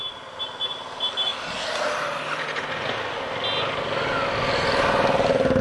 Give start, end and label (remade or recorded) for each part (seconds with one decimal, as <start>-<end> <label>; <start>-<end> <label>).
0.0-5.6 recorded